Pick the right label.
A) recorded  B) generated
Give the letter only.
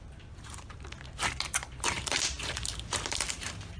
A